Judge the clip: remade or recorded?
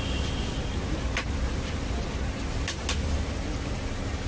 recorded